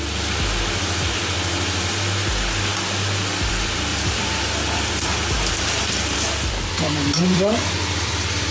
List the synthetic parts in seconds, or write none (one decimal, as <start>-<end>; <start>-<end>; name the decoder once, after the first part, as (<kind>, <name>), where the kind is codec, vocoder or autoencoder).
3.9-8.5 (vocoder, BigVGAN v2)